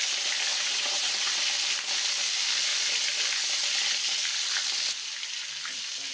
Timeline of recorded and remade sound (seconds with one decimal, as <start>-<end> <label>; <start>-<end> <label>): 0.0-0.5 recorded; 0.5-1.4 remade; 1.4-6.1 recorded